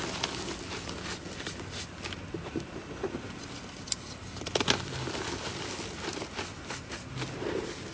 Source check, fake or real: real